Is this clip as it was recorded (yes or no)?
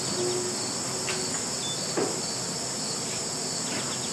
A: yes